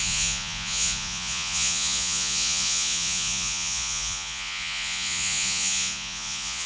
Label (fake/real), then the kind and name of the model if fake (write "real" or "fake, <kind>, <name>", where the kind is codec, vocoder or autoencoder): fake, vocoder, Vocos